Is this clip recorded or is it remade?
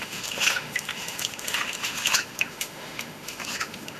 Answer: remade